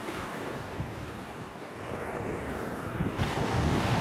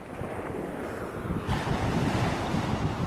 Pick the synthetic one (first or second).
first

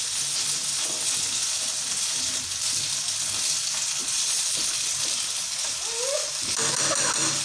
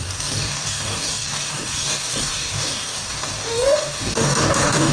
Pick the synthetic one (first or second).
second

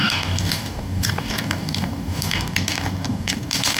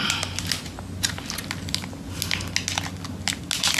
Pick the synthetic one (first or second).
first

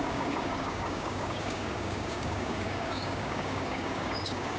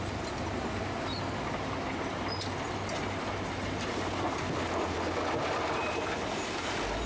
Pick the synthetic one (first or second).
first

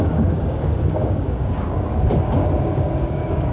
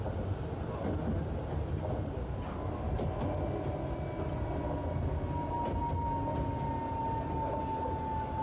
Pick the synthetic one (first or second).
first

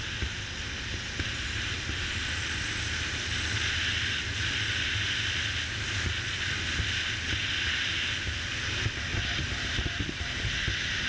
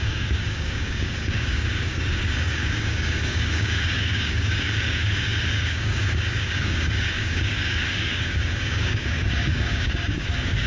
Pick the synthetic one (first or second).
second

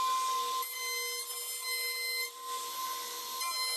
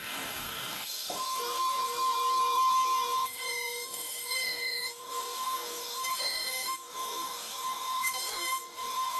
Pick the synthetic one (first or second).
second